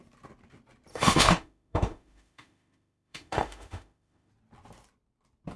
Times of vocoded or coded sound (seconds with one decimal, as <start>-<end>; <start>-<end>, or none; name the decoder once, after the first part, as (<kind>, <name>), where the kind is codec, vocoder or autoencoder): 0.9-4.3 (autoencoder, DAC-VAE)

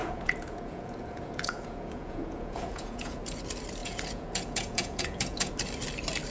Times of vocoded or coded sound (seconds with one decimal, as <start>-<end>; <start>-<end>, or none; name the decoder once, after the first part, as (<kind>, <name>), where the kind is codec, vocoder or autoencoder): 0.0-3.2 (vocoder, Vocos); 3.8-5.5

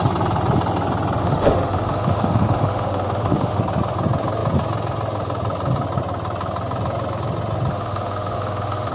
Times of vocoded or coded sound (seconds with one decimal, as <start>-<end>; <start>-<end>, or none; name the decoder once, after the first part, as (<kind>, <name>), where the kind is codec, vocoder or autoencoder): 1.2-3.6 (autoencoder, DAC-VAE); 7.7-8.9

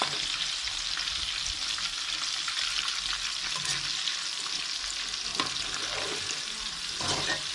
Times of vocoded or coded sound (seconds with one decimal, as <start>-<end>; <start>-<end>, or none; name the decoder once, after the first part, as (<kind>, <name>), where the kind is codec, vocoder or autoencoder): none

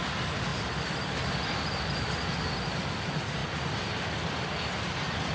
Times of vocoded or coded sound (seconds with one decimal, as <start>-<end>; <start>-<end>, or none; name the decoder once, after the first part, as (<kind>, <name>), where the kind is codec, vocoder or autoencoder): none

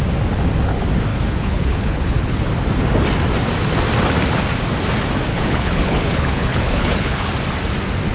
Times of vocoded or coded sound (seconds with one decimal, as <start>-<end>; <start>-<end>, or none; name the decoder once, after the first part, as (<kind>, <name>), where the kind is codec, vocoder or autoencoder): 1.1-2.4 (codec, HILCodec); 5.3-7.3